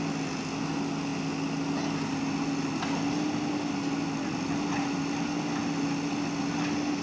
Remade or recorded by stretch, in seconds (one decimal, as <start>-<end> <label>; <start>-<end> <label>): 0.0-7.0 recorded